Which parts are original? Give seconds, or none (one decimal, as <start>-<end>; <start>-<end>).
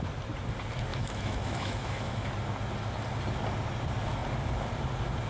0.0-0.9; 2.3-5.3